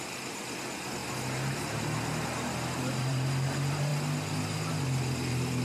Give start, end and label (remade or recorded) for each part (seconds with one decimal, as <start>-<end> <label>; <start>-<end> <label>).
0.0-1.0 remade; 1.0-2.2 recorded; 2.2-3.9 remade; 3.9-4.7 recorded; 4.7-5.6 remade